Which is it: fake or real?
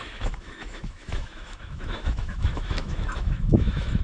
fake